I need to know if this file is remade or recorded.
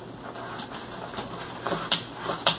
recorded